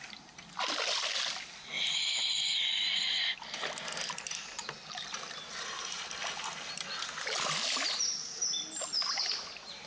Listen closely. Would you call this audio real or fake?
real